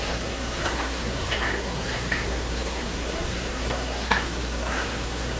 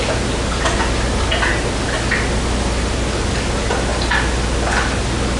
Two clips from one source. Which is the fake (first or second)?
first